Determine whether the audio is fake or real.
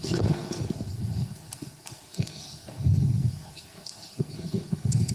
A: fake